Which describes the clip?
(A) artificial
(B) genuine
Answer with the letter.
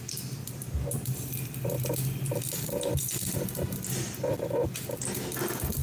B